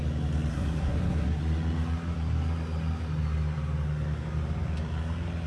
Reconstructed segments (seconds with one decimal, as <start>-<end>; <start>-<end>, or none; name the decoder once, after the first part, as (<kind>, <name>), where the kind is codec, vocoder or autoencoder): 0.5-1.4 (codec, SNAC)